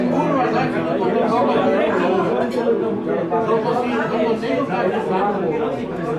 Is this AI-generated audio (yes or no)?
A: no